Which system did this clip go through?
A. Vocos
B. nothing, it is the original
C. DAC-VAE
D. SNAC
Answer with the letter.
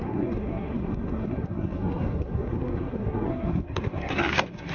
D